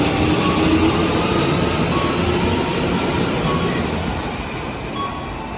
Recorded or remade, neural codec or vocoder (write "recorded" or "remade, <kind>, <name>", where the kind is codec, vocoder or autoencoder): recorded